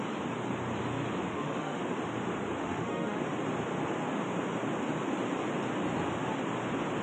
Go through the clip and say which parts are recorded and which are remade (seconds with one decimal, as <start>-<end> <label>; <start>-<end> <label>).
0.0-1.3 recorded; 1.3-1.8 remade; 1.8-2.6 recorded; 2.6-3.2 remade; 3.2-7.0 recorded